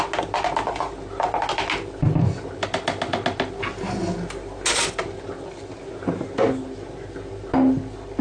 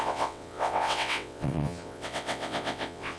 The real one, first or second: first